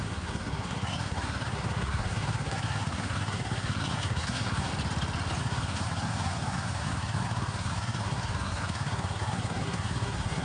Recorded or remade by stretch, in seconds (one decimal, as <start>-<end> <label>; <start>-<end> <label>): 0.0-4.7 remade; 4.7-5.4 recorded; 5.4-10.4 remade